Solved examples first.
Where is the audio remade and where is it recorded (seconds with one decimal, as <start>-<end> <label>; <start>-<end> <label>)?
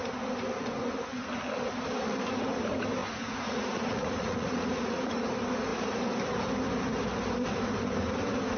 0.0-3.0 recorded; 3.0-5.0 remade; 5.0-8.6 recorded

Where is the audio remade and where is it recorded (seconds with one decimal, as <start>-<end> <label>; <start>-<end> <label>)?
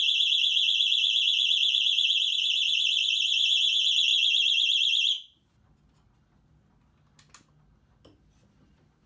0.0-0.5 recorded; 0.5-2.3 remade; 2.3-9.1 recorded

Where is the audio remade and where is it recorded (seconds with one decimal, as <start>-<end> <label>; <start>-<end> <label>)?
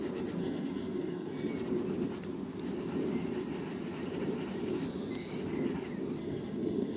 0.0-0.4 recorded; 0.4-1.5 remade; 1.5-6.2 recorded; 6.2-7.0 remade